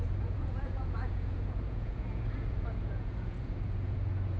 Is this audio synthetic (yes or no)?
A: yes